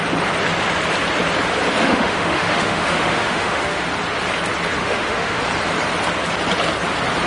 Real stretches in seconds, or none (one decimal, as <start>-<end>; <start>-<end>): 0.0-1.8; 3.8-4.8; 5.4-7.3